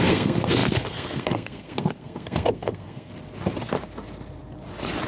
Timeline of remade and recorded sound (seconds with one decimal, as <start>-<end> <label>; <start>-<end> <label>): 0.0-3.1 remade; 3.1-5.1 recorded